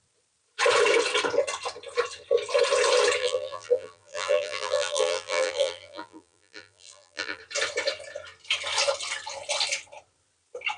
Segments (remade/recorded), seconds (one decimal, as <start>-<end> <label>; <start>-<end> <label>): 0.0-3.2 recorded; 3.2-7.4 remade; 7.4-10.8 recorded